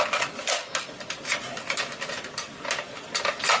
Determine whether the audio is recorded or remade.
recorded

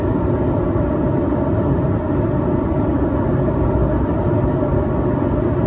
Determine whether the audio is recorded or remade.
recorded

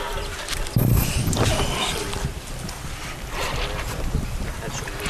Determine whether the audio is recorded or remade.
remade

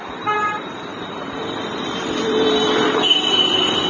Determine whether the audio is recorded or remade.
remade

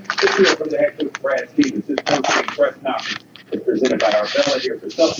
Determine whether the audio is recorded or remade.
remade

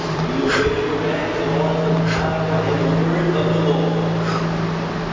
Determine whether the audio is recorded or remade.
recorded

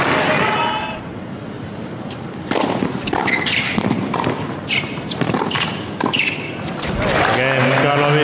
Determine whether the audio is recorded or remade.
recorded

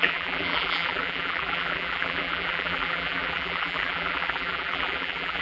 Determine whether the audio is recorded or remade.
remade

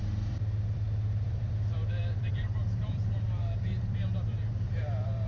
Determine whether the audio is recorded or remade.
remade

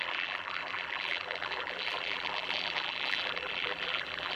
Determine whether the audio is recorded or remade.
remade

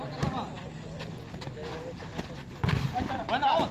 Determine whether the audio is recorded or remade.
recorded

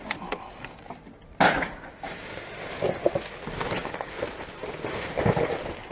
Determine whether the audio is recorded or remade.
recorded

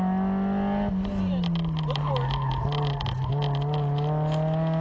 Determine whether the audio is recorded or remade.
recorded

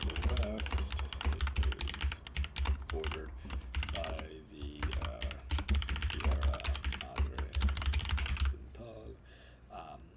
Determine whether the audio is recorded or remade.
remade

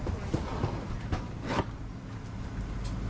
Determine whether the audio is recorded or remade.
recorded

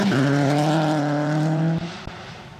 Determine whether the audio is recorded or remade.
remade